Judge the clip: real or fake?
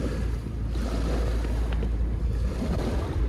real